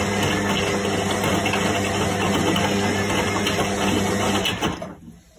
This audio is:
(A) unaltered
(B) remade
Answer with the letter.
A